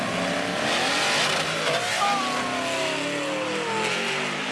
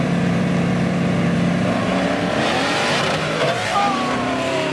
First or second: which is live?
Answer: first